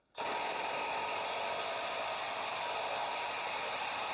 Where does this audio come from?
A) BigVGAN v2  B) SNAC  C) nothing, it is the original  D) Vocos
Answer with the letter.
C